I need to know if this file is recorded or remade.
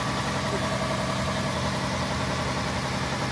recorded